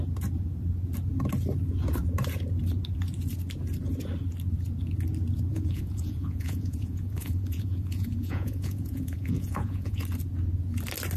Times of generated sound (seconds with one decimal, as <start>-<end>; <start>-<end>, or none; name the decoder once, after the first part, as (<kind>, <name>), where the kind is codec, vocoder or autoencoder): 5.5-10.0 (vocoder, Vocos)